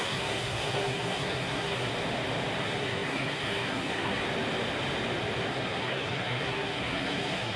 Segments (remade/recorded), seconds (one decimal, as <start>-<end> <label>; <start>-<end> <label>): 0.0-1.9 remade; 1.9-2.6 recorded; 2.6-4.2 remade; 4.2-5.5 recorded; 5.5-7.6 remade

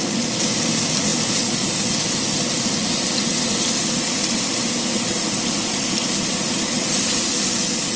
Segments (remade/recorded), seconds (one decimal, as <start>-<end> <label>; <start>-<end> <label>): 0.0-8.0 recorded

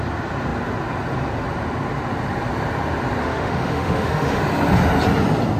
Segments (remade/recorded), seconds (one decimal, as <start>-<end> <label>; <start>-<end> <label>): 0.0-3.2 recorded; 3.2-4.4 remade; 4.4-5.6 recorded

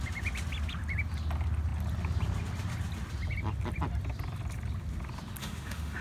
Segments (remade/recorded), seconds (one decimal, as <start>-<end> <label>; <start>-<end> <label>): 0.0-5.4 recorded; 5.4-6.0 remade

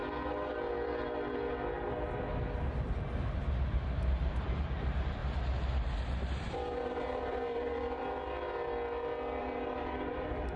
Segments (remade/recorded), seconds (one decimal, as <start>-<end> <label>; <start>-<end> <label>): 0.0-4.0 recorded; 4.0-5.2 remade; 5.2-6.3 recorded; 6.3-8.0 remade; 8.0-9.4 recorded; 9.4-10.6 remade

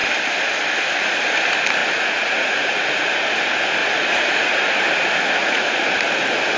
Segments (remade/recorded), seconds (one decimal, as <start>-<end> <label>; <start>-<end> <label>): 0.0-1.8 recorded; 1.8-3.2 remade; 3.2-3.8 recorded; 3.8-4.7 remade; 4.7-5.4 recorded; 5.4-5.9 remade; 5.9-6.6 recorded